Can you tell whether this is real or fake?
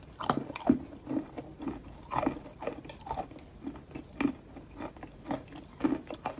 real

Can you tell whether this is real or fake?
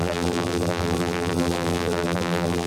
fake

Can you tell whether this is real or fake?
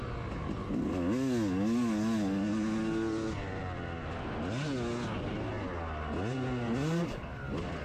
real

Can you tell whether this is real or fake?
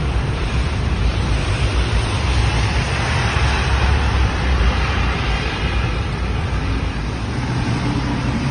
fake